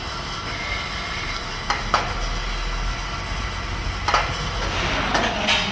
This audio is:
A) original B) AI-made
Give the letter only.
A